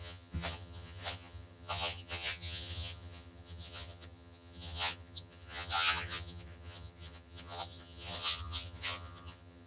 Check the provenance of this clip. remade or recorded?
remade